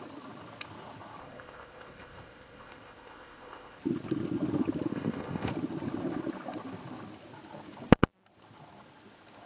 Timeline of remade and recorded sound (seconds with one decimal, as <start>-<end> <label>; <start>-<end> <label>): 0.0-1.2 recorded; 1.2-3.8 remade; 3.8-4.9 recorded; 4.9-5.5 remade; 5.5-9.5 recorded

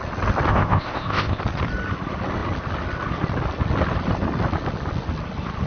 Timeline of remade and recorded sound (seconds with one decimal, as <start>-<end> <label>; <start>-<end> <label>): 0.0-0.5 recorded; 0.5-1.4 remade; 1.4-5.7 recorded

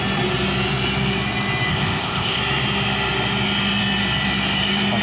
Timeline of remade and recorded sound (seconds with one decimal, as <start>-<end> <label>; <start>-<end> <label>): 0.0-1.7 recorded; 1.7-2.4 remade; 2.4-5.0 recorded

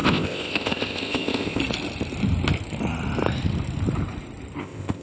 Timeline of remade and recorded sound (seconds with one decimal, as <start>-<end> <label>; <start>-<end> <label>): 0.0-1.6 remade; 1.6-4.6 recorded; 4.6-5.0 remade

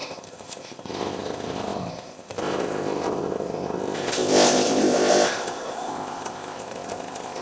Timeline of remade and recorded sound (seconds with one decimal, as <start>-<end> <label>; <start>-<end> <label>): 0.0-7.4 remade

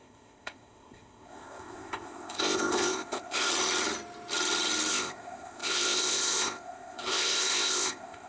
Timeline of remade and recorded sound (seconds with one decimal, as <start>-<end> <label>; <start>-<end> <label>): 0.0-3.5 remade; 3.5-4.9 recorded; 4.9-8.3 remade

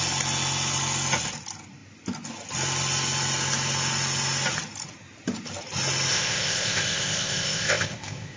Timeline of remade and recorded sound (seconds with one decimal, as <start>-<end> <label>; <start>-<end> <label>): 0.0-6.1 recorded; 6.1-8.4 remade